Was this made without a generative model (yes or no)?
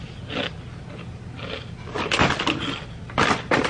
no